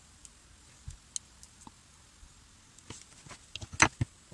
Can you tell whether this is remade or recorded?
recorded